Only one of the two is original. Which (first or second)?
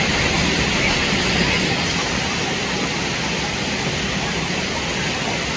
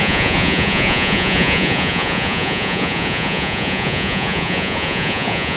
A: first